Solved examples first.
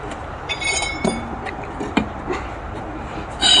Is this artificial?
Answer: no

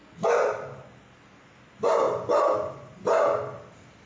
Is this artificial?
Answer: no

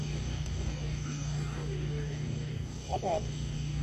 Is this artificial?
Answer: yes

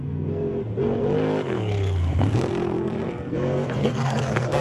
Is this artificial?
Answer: yes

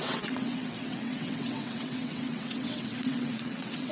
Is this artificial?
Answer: yes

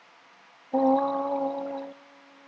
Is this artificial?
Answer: no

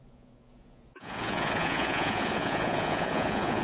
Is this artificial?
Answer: yes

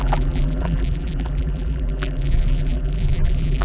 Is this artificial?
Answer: yes